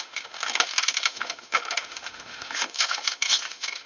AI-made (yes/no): yes